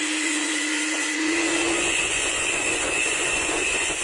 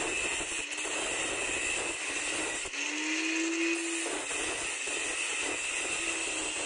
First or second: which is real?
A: second